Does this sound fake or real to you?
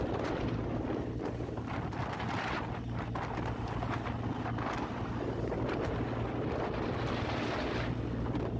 real